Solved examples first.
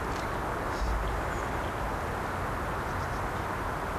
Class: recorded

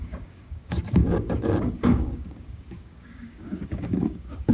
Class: remade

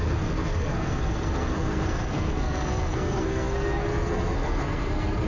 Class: remade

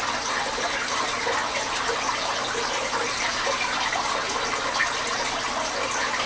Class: recorded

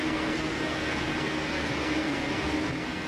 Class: remade